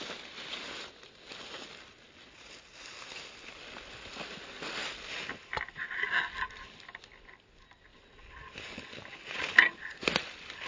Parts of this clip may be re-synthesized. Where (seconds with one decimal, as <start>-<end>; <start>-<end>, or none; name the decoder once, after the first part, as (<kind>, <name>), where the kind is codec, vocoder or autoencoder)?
none